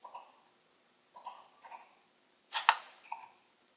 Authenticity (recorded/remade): recorded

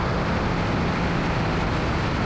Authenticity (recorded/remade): recorded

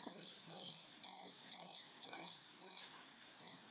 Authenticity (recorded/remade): remade